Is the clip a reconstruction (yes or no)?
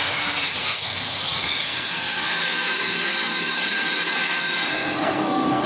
yes